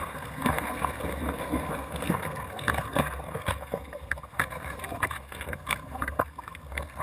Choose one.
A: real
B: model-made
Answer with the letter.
B